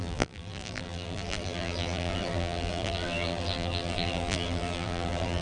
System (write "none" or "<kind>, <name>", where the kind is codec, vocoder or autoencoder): vocoder, BigVGAN v2